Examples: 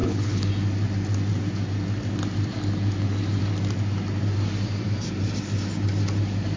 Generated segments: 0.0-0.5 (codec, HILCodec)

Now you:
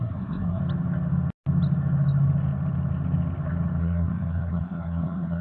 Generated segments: 0.0-0.6 (codec, SNAC); 3.8-5.4